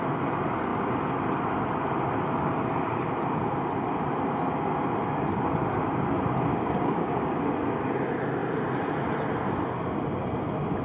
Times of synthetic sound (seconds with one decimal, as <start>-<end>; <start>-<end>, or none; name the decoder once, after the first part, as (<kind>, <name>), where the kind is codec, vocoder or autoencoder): 6.5-7.5 (codec, DAC)